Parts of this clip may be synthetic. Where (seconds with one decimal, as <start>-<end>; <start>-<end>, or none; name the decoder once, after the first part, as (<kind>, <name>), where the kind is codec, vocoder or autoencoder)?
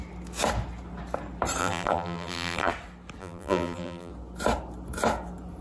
1.6-2.7 (vocoder, BigVGAN v2); 3.2-4.1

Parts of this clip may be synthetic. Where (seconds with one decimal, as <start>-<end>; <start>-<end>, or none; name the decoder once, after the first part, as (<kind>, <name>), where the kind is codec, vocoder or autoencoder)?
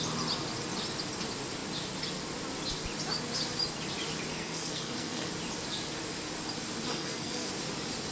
4.3-5.3 (codec, SNAC); 6.9-7.5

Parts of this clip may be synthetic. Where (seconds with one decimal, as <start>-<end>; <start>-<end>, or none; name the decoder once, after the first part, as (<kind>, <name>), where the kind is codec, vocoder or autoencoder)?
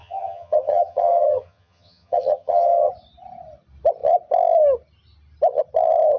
0.0-2.9 (vocoder, HiFi-GAN)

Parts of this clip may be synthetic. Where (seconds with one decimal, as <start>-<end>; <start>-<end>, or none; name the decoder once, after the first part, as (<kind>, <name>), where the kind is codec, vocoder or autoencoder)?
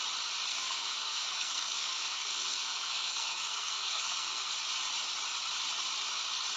0.5-4.5 (codec, SNAC)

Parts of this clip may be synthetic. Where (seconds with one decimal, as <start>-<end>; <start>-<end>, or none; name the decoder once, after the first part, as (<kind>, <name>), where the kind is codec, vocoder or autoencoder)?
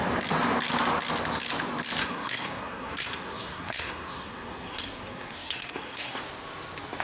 2.0-6.2 (codec, SNAC)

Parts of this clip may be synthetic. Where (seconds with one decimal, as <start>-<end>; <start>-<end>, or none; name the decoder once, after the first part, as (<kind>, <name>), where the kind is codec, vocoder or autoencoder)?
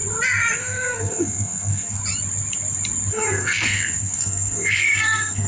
0.6-2.0 (codec, SNAC); 3.1-5.5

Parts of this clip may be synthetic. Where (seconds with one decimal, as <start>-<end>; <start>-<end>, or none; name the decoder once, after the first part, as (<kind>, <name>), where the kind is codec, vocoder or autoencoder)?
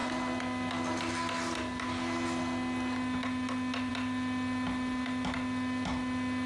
none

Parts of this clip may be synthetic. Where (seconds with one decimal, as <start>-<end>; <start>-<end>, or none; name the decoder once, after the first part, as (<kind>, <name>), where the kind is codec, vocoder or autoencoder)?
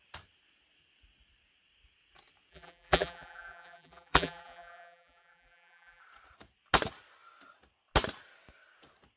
2.5-6.0 (vocoder, BigVGAN v2)